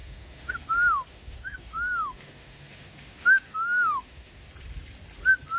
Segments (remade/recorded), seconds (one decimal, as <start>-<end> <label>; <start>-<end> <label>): 0.0-0.5 remade; 0.5-1.1 recorded; 1.1-4.5 remade; 4.5-5.6 recorded